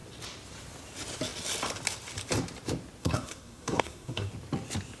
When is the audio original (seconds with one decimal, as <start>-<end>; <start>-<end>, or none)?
0.0-3.0; 4.3-5.0